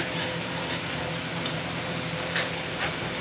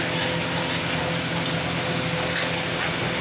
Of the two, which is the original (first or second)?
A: second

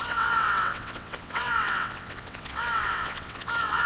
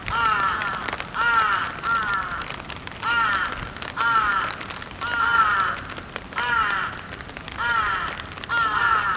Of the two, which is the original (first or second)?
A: second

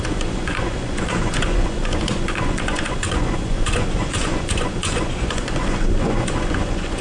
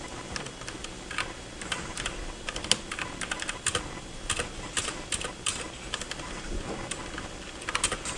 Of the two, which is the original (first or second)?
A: second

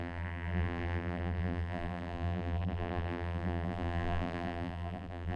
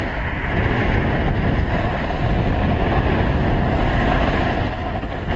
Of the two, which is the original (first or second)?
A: second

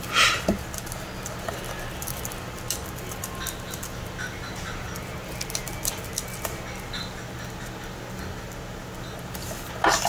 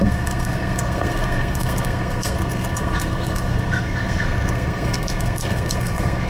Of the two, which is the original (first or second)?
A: first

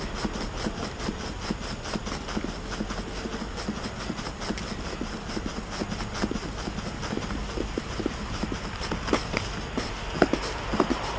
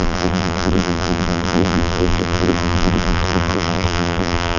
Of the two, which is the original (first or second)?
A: first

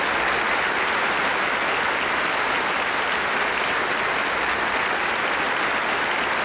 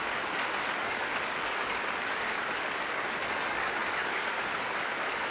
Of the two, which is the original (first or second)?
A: first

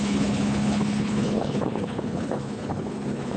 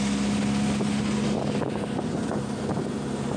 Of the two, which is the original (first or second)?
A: second